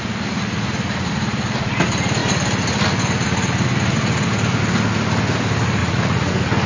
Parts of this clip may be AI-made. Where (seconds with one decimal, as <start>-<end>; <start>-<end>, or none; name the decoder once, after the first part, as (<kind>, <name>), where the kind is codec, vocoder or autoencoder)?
5.8-6.3 (vocoder, Vocos)